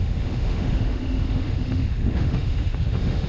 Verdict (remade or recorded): remade